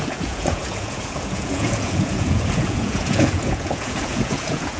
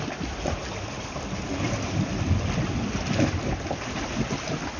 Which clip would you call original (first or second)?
second